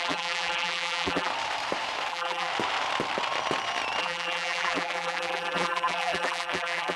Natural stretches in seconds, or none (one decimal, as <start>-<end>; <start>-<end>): 1.3-2.1; 2.5-4.0